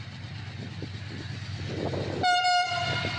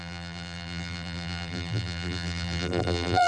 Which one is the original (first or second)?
first